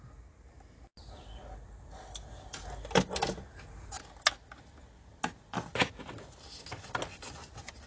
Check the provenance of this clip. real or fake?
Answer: real